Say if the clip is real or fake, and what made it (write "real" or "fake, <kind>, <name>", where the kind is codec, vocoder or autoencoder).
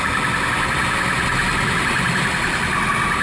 real